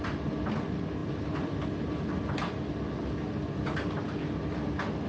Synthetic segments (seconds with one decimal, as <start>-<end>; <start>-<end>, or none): none